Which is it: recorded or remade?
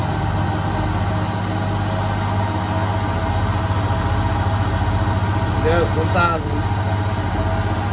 recorded